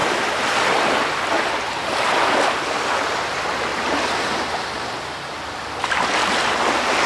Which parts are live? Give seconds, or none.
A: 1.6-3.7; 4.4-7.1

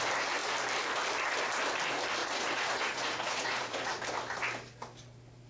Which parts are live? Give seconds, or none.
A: 0.0-2.2; 4.0-5.5